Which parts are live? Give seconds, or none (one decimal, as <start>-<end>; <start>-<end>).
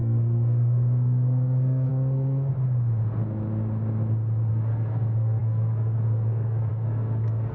2.5-4.5